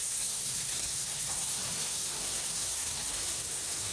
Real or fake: fake